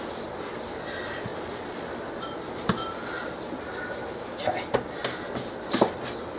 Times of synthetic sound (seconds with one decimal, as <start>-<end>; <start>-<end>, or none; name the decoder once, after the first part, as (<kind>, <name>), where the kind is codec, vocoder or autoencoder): none